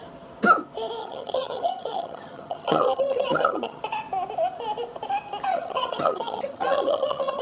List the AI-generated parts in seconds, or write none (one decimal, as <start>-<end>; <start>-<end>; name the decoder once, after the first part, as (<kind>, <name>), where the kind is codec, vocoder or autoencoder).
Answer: 1.0-3.8 (vocoder, HiFi-GAN); 5.5-7.4